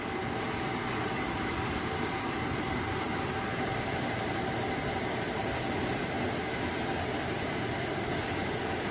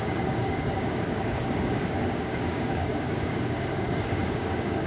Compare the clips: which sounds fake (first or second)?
second